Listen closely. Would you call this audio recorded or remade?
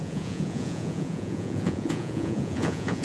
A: remade